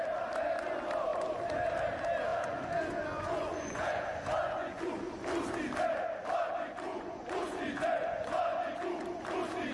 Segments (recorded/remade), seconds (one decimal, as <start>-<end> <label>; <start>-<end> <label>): 0.0-2.3 recorded; 2.3-4.8 remade; 4.8-6.9 recorded; 6.9-8.8 remade; 8.8-9.7 recorded

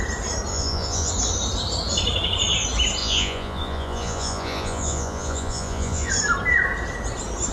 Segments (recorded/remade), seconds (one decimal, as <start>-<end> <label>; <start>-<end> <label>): 0.0-0.5 recorded; 0.5-1.1 remade; 1.1-3.0 recorded; 3.0-6.1 remade; 6.1-7.5 recorded

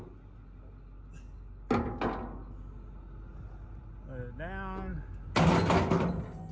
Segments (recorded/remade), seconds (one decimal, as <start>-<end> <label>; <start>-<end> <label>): 0.0-6.5 recorded